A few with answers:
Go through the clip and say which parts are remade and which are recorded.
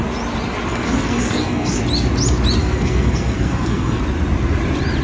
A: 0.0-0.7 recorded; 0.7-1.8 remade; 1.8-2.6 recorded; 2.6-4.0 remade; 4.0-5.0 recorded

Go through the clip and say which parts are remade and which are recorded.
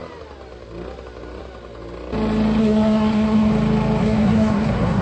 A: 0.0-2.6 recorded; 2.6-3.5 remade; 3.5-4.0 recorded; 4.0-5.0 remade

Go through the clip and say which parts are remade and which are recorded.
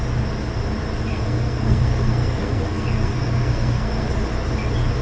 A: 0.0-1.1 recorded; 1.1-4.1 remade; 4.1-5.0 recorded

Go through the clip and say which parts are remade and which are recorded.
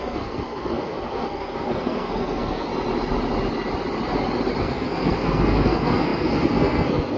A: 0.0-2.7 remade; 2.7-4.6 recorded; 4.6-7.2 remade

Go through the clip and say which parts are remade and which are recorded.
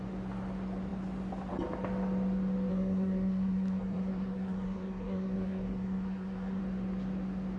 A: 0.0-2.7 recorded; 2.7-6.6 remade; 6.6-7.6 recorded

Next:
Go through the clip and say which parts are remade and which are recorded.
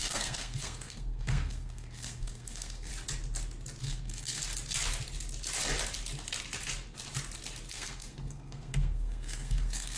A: 0.0-2.9 remade; 2.9-3.8 recorded; 3.8-4.4 remade; 4.4-7.7 recorded; 7.7-10.0 remade